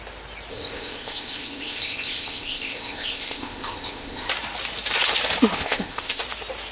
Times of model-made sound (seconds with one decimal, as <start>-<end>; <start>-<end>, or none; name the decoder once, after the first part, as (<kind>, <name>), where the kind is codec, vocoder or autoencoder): 0.5-4.3 (codec, ZipCodec); 5.5-6.2